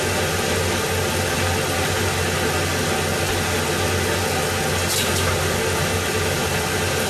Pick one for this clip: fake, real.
real